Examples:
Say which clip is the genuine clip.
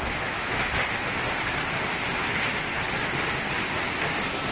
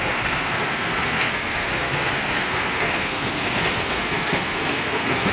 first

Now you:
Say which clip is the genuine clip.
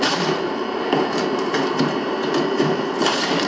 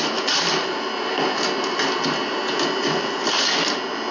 second